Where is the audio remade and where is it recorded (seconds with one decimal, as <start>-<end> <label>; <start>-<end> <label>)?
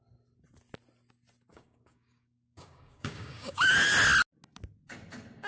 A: 0.0-1.5 recorded; 1.5-3.7 remade; 3.7-5.5 recorded